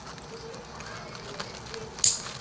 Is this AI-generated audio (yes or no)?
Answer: no